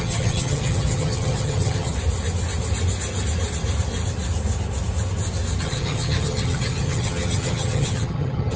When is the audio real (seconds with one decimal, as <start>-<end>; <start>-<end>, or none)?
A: 1.9-5.6